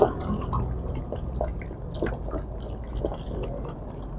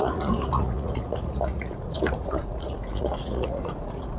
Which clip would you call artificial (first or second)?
second